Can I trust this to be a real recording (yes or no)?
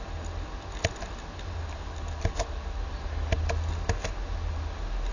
yes